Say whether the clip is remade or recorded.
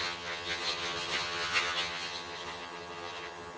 remade